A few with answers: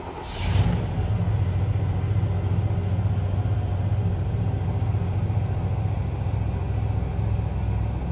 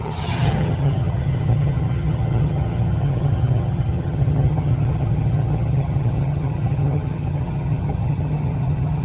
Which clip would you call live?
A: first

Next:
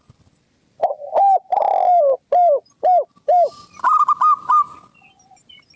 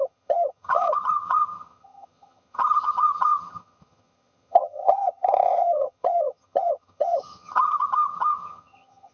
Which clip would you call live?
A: first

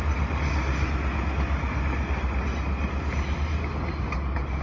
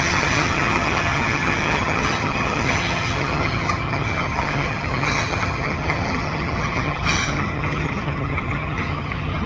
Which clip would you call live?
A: first